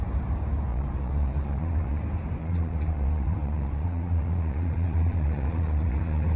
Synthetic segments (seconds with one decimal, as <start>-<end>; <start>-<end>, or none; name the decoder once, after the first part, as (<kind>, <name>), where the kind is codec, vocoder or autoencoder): 0.7-2.0 (vocoder, Vocos); 2.4-6.4